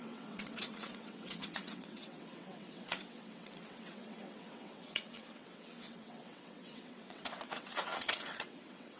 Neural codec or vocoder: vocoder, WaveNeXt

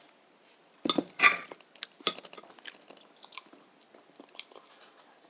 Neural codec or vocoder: none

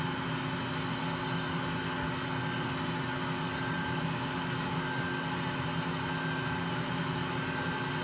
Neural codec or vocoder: none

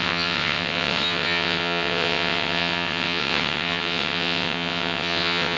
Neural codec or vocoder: vocoder, WaveNeXt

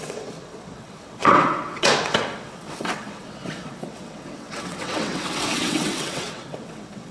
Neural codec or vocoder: vocoder, WaveNeXt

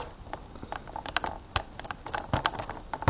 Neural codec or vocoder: none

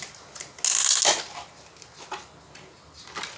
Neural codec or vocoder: none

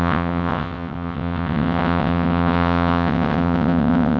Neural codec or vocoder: vocoder, WaveNeXt